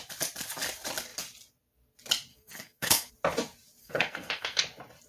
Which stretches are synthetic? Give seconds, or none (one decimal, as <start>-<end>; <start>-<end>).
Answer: 2.3-3.1; 3.8-4.6

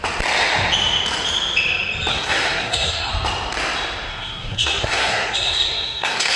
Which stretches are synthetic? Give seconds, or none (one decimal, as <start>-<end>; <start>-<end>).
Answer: 2.1-3.1; 4.1-6.4

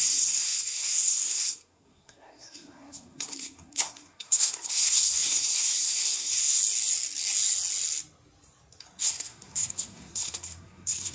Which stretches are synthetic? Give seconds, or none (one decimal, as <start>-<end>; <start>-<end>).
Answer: 0.0-6.6; 9.0-11.1

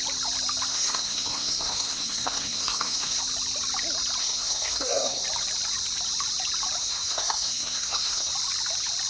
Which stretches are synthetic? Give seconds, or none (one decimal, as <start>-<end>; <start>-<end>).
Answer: 0.7-3.2; 4.2-5.2; 6.8-8.3

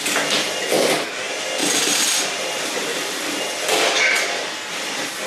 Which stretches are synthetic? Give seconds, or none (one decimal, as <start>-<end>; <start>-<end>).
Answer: none

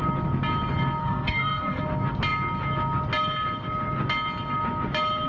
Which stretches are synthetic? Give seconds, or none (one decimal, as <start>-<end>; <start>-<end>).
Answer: 1.0-1.8

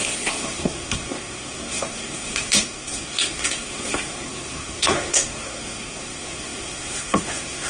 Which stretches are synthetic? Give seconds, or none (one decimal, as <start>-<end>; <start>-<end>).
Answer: 0.0-7.7

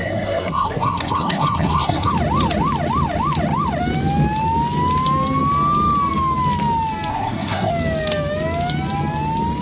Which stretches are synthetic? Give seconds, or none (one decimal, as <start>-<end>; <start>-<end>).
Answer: 0.0-2.1; 7.1-7.7